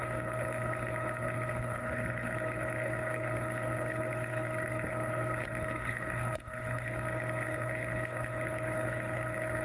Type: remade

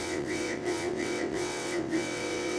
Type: remade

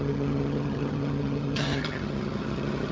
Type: remade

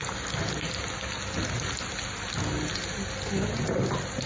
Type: recorded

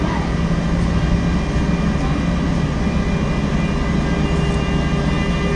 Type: recorded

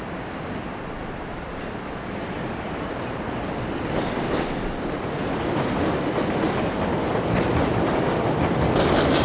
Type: recorded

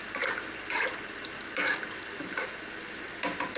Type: recorded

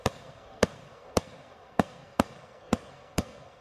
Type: remade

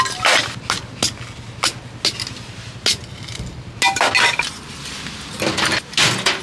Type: recorded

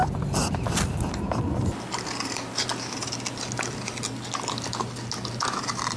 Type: recorded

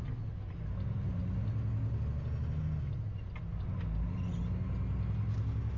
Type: recorded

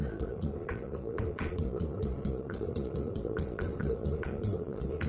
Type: remade